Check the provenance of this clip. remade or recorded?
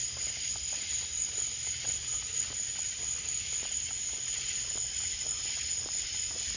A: recorded